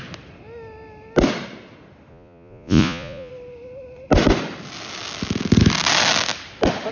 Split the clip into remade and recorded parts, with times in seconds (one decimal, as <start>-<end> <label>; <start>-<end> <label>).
0.0-2.1 recorded; 2.1-3.3 remade; 3.3-6.9 recorded